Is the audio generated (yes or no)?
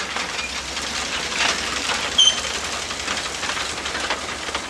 no